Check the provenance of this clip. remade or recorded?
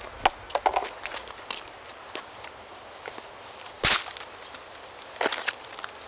recorded